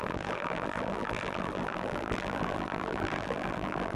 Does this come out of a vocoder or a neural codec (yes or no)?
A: yes